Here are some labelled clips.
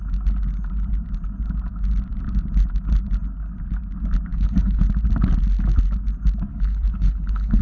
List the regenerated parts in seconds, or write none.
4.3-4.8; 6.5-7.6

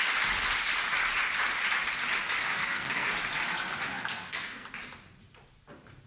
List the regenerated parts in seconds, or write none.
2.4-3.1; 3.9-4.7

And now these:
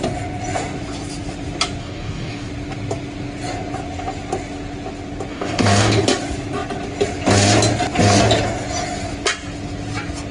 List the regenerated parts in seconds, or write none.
1.8-2.5; 5.3-6.0

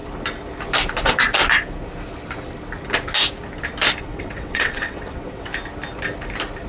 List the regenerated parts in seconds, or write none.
4.0-5.5

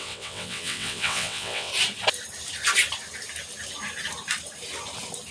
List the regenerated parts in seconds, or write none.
0.0-1.7

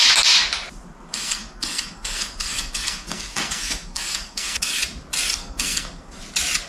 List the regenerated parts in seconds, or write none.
1.1-4.8; 5.3-6.2

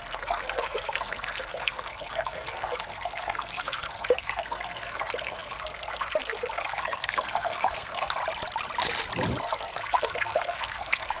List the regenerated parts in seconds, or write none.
0.0-8.2; 9.4-11.2